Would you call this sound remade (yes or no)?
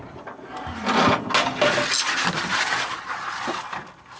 no